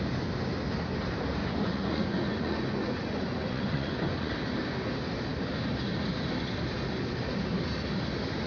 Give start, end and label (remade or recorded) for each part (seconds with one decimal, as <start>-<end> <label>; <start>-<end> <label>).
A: 0.0-1.4 recorded; 1.4-4.3 remade; 4.3-8.5 recorded